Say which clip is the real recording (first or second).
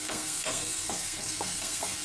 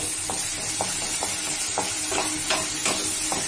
second